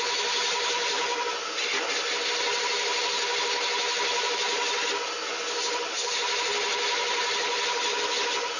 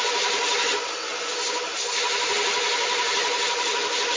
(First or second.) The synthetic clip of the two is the second